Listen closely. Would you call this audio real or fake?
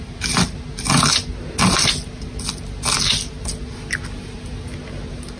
real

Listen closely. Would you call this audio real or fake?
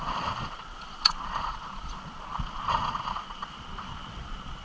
fake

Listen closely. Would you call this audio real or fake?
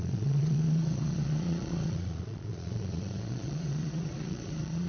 fake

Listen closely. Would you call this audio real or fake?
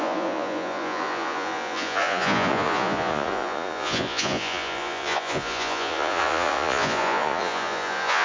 fake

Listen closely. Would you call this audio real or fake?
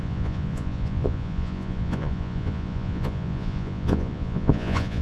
fake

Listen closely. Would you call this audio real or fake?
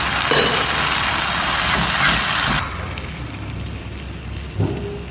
real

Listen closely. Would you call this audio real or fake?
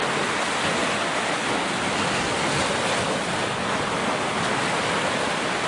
real